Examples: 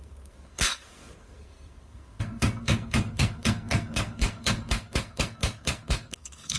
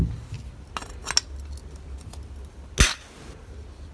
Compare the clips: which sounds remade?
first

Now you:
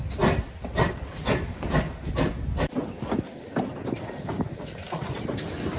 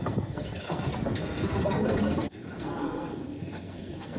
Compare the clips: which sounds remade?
second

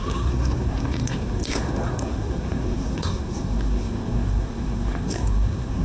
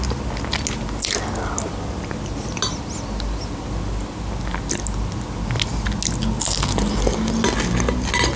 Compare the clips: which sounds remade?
first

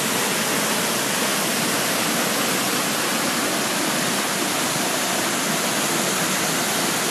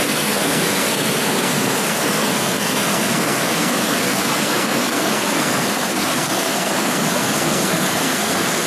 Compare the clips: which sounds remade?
second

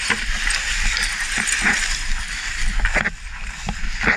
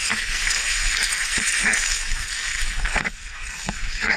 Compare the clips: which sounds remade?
second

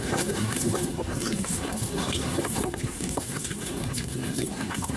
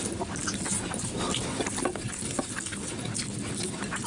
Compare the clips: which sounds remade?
first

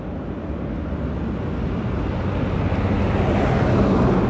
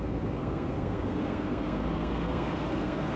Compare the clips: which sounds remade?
second